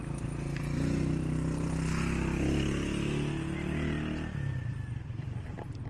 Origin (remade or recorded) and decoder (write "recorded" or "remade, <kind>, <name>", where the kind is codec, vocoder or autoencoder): recorded